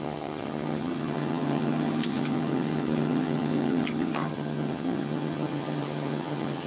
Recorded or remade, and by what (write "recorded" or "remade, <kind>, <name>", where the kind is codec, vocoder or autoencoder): remade, vocoder, HiFi-GAN